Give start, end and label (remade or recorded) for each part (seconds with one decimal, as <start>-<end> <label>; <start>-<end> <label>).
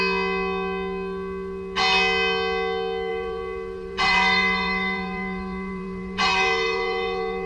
0.0-3.1 recorded; 3.1-7.5 remade